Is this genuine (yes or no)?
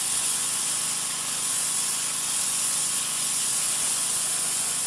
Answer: no